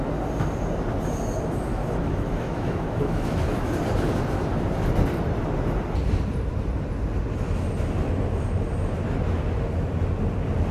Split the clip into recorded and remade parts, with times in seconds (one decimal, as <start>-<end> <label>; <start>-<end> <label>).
0.0-1.7 recorded; 1.7-3.7 remade; 3.7-10.7 recorded